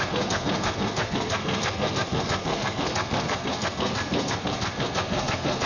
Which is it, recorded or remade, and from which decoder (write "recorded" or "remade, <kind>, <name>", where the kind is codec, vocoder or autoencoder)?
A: remade, codec, SNAC